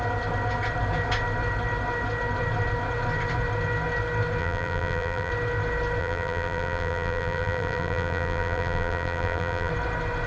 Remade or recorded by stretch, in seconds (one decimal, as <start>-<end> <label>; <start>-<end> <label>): 0.0-4.4 recorded; 4.4-5.3 remade; 5.3-6.0 recorded; 6.0-9.7 remade; 9.7-10.3 recorded